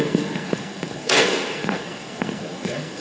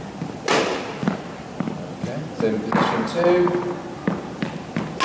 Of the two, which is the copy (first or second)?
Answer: first